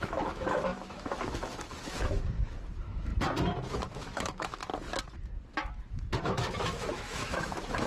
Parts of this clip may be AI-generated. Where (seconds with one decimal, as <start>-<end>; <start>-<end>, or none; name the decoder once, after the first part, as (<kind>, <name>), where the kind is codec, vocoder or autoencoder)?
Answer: 0.0-3.1 (autoencoder, DAC-VAE); 3.7-4.7; 5.7-7.9